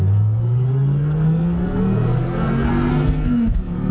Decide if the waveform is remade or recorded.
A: remade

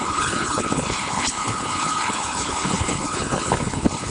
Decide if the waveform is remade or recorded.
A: remade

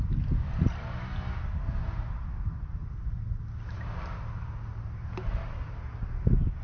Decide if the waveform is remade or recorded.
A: recorded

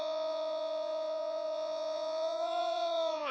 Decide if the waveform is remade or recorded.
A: remade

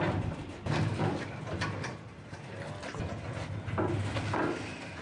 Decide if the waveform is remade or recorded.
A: recorded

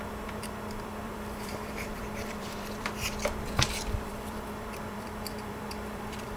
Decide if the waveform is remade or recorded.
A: remade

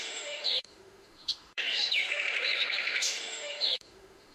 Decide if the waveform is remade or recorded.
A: remade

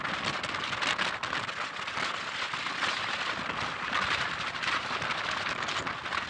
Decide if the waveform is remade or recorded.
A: recorded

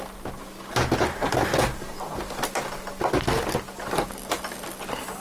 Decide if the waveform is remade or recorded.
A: recorded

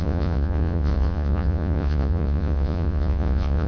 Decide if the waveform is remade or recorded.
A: remade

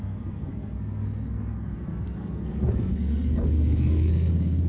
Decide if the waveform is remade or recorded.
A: remade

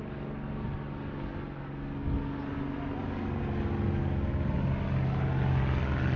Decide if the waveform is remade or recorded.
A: recorded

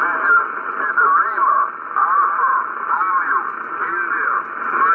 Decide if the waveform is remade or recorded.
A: recorded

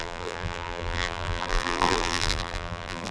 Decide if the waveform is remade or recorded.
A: remade